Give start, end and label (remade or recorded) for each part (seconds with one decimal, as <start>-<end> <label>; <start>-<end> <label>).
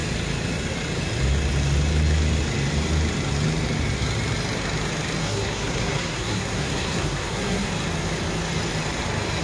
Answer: 0.0-5.2 recorded; 5.2-7.7 remade; 7.7-9.4 recorded